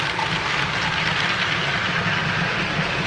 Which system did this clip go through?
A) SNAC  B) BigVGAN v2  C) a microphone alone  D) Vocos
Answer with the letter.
C